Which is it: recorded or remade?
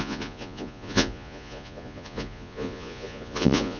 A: remade